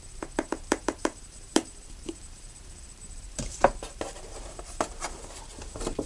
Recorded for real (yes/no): no